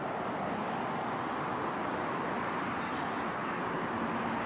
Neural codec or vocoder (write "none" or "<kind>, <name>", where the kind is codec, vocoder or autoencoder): none